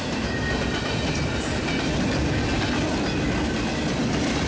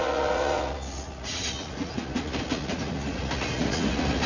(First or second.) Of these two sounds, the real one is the first